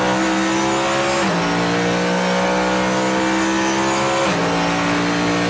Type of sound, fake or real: real